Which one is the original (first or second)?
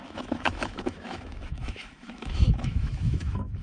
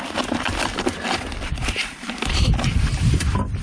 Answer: second